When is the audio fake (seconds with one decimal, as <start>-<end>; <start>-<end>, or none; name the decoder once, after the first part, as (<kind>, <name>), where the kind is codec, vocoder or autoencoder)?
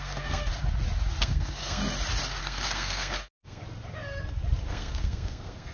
0.0-0.5 (codec, SNAC); 1.2-1.8; 2.4-3.6; 4.7-5.7